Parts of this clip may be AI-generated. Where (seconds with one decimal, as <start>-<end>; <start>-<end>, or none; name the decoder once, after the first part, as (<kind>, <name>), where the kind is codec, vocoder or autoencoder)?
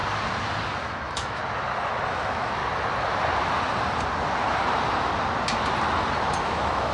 0.8-1.4 (autoencoder, DAC-VAE); 2.1-2.6; 6.4-6.9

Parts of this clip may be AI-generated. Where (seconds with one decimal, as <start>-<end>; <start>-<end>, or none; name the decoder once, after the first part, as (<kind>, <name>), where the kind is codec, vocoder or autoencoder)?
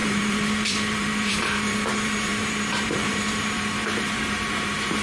0.0-5.0 (vocoder, BigVGAN v2)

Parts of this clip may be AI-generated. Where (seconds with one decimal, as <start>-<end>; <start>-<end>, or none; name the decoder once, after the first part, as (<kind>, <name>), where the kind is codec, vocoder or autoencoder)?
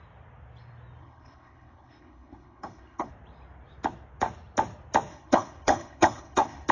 1.0-3.1 (codec, HILCodec); 5.1-6.7